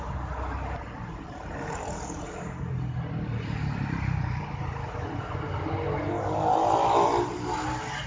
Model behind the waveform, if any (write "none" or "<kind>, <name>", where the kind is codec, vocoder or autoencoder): none